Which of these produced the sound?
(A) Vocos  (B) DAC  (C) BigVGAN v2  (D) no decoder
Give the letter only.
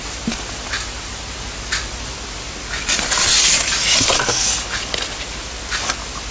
D